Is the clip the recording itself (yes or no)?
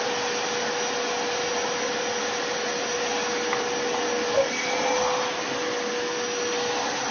yes